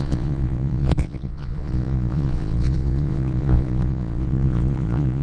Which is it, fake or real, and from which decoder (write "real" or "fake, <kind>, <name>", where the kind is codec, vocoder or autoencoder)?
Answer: fake, vocoder, Vocos